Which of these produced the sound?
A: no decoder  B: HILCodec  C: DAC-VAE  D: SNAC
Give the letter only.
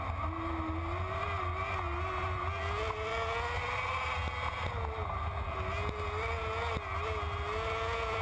A